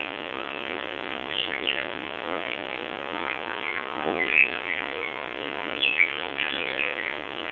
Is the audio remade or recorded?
remade